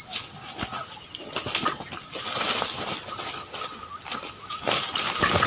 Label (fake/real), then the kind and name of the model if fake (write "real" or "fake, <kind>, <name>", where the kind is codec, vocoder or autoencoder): real